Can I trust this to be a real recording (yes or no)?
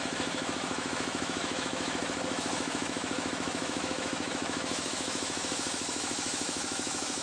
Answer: no